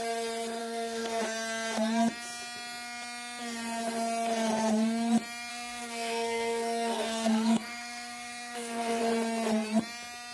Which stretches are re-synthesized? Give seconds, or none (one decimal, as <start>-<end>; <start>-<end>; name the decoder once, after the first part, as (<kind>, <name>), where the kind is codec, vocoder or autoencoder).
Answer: 0.6-1.2 (codec, SNAC); 5.5-9.0